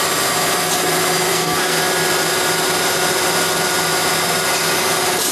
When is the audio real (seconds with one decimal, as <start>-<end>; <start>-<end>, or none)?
0.0-1.3; 1.8-5.3